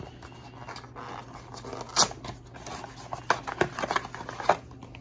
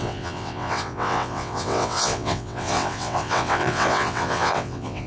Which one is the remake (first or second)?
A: second